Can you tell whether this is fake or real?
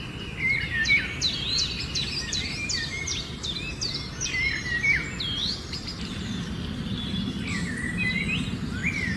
real